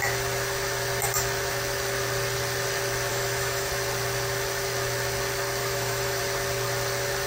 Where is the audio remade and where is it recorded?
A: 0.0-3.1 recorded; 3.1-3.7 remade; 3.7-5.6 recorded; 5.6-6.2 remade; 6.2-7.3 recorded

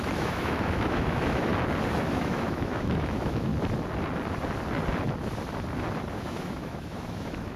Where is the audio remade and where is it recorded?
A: 0.0-1.5 remade; 1.5-2.0 recorded; 2.0-3.5 remade; 3.5-6.1 recorded; 6.1-7.6 remade

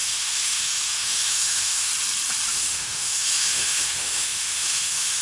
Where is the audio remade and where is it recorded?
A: 0.0-1.9 remade; 1.9-2.5 recorded; 2.5-5.2 remade